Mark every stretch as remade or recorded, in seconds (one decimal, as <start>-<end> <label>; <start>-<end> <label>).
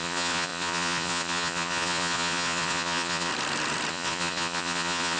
0.0-3.3 remade; 3.3-3.9 recorded; 3.9-5.2 remade